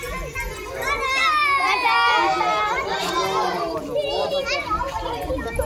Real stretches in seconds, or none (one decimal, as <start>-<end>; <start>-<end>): 0.0-5.7